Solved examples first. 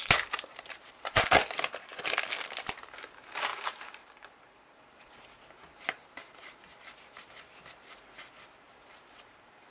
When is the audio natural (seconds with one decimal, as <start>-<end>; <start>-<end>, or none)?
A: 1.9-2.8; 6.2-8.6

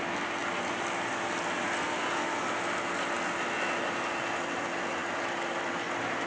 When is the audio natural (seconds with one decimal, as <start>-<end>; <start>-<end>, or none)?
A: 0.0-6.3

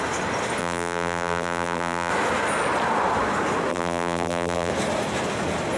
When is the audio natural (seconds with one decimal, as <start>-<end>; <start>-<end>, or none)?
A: 0.0-0.6; 2.1-3.7; 4.7-5.8

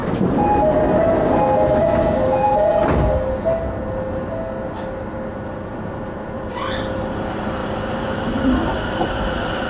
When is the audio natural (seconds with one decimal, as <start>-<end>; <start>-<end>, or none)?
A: 0.0-5.6; 6.6-7.6